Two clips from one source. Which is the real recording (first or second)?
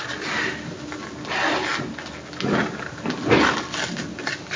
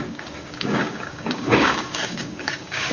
first